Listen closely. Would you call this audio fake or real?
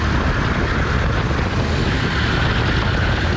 real